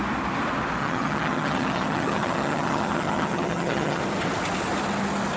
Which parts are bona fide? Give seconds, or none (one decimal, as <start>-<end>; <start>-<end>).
0.0-0.8; 4.0-5.4